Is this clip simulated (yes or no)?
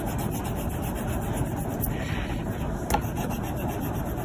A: no